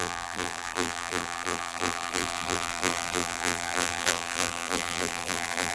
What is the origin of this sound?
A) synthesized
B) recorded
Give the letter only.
A